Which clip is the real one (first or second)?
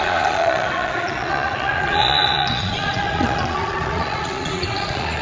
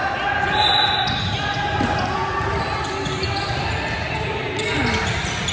second